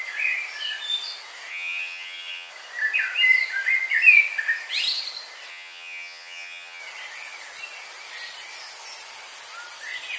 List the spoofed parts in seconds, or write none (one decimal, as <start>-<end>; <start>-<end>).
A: 1.5-2.5; 5.5-6.8